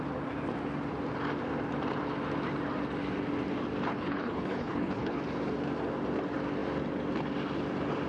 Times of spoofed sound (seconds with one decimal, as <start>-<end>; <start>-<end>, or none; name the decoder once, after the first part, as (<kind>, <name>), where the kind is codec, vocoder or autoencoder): 3.9-5.2 (codec, HILCodec)